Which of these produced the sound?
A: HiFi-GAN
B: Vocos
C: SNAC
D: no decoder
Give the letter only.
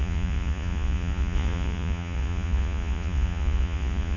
B